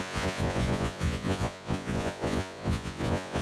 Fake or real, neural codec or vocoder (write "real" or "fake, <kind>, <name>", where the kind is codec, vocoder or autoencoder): fake, vocoder, Vocos